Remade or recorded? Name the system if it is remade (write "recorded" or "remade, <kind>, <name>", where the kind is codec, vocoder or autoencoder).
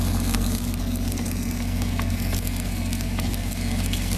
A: remade, codec, SNAC